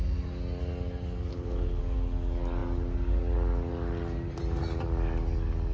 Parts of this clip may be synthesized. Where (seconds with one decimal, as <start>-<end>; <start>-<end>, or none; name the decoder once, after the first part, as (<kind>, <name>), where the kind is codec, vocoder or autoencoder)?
1.3-1.8 (codec, HILCodec)